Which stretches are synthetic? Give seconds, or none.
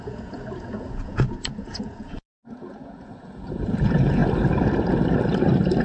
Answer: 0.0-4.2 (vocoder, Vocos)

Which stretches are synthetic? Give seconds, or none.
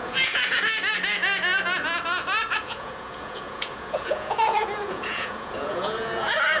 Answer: 0.0-0.6 (vocoder, Vocos); 2.4-6.6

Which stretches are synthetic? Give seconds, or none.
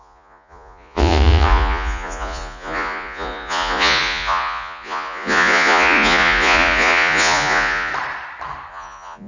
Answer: 0.0-7.9 (vocoder, Vocos); 8.7-9.3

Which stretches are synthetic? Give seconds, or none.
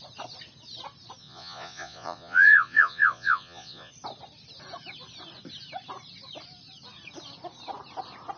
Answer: 1.2-3.9 (vocoder, Vocos)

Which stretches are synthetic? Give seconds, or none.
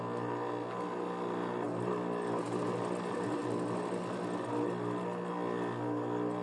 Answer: none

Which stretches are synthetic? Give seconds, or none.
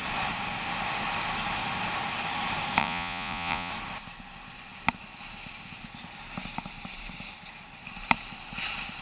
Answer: 2.8-3.7 (vocoder, Vocos)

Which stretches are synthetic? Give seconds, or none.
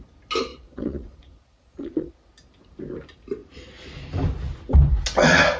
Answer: 0.5-2.1 (vocoder, Vocos)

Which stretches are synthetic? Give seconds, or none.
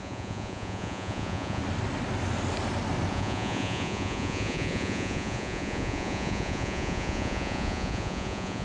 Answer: 0.0-1.6 (vocoder, Vocos); 3.1-8.6